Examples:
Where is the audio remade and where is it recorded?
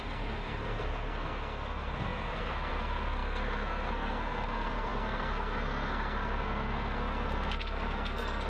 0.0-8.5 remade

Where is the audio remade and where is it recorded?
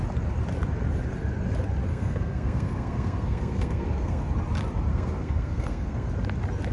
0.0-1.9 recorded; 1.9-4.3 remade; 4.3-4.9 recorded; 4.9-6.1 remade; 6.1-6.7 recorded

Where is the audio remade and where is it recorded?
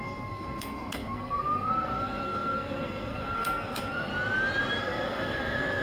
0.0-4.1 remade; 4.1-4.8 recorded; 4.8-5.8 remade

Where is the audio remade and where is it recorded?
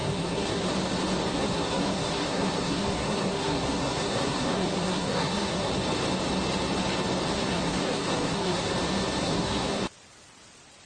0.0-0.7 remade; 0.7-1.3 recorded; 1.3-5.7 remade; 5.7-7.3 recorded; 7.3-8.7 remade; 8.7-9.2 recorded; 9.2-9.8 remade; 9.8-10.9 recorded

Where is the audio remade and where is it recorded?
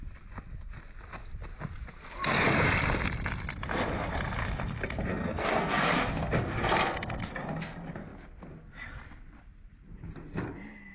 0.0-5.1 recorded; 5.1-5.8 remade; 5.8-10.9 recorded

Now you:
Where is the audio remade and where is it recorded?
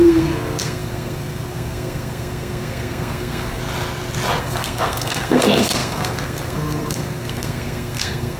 0.0-3.6 remade; 3.6-4.4 recorded; 4.4-8.4 remade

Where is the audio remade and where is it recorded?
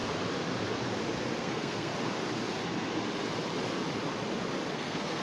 0.0-1.4 recorded; 1.4-1.9 remade; 1.9-4.7 recorded; 4.7-5.2 remade